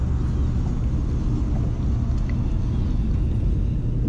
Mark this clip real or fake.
real